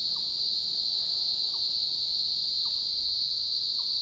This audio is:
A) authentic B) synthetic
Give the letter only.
A